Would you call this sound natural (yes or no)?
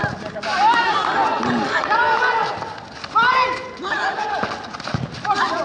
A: yes